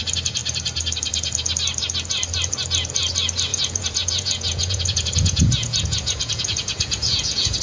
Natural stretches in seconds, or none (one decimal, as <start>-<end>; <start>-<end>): 0.0-3.5

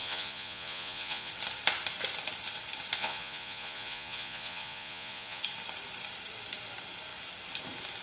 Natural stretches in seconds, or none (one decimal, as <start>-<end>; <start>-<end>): 1.3-3.0; 5.4-8.0

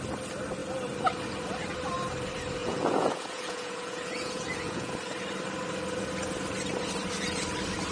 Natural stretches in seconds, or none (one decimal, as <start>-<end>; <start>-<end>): 0.0-2.6; 4.9-7.9

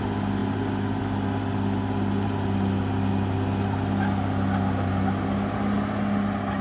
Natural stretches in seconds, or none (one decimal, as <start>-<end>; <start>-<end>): 0.0-6.6

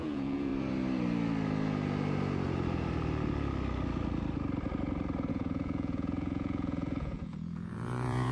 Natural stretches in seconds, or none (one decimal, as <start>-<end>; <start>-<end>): 0.5-5.3

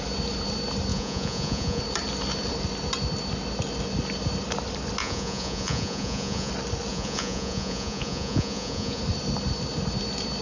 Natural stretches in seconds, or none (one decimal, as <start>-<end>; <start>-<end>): 0.0-0.9; 1.8-5.0; 6.5-6.9; 9.0-10.4

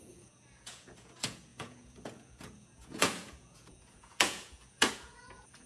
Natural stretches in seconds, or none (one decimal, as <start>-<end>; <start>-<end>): none

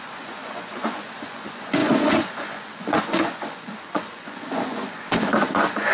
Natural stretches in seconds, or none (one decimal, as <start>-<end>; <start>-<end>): none